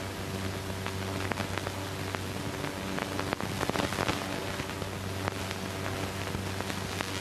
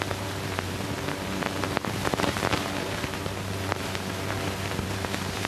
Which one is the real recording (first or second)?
first